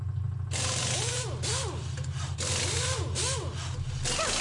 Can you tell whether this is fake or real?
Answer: real